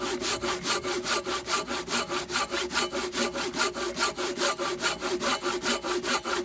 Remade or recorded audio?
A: recorded